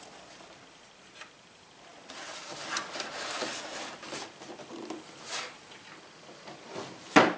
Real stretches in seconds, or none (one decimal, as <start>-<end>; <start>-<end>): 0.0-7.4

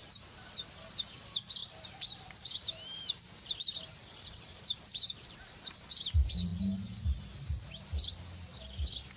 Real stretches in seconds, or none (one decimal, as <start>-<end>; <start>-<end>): 0.0-1.6; 5.6-9.2

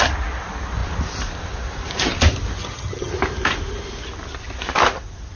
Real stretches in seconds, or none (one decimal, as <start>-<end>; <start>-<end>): 0.0-2.6; 3.1-5.4